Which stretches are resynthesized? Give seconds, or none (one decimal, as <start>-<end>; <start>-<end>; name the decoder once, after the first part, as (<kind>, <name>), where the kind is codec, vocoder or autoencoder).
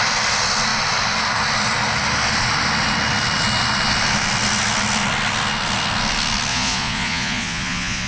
6.5-8.1 (vocoder, Vocos)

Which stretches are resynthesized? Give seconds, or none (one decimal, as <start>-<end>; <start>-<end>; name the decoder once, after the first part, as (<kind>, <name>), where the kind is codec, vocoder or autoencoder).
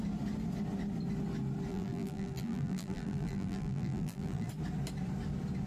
1.7-4.5 (vocoder, BigVGAN v2)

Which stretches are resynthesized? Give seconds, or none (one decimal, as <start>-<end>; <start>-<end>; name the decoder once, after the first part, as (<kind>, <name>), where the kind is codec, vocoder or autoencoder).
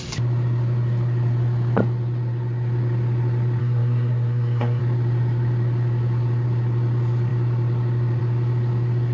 3.6-4.8 (codec, SNAC)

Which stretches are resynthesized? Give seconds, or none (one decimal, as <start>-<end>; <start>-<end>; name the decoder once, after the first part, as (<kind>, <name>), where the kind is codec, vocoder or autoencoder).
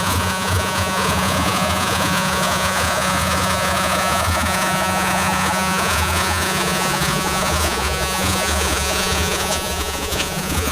0.0-10.7 (vocoder, Vocos)